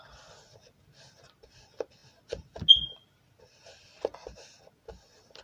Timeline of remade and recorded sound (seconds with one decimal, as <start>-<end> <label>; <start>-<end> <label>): 0.0-5.4 recorded